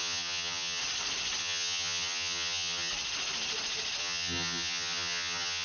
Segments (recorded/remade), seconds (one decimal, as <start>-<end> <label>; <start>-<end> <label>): 0.0-0.8 remade; 0.8-1.4 recorded; 1.4-2.9 remade; 2.9-4.0 recorded; 4.0-5.6 remade